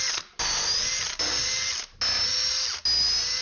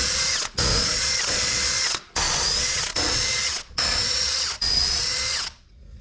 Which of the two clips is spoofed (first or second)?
second